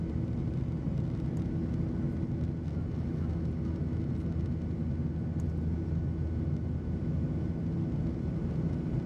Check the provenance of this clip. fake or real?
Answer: real